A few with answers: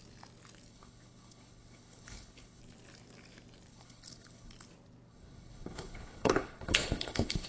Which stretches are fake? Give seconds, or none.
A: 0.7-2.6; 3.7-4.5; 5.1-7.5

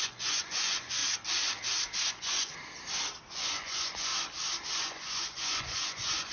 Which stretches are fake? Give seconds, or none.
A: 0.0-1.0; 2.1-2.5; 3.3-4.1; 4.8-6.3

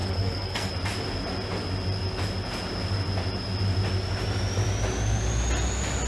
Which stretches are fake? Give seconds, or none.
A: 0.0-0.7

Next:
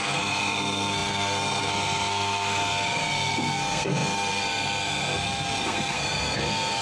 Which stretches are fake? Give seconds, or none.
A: 0.0-6.8

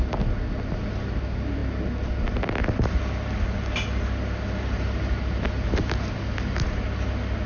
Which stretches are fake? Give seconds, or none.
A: none

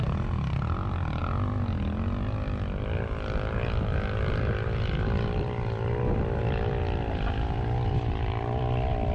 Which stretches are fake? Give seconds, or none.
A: none

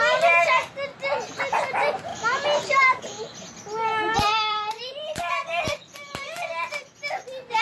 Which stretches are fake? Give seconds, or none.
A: 2.1-3.0; 4.3-5.2